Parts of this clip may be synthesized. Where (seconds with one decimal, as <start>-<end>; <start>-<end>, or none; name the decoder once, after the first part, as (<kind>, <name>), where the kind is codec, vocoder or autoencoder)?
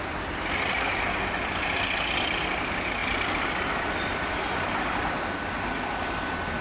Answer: none